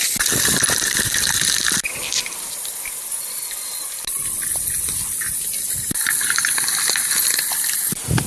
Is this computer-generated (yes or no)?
no